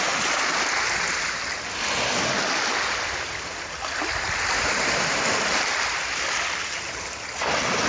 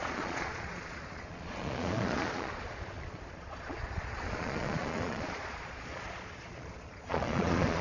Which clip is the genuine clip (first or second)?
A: first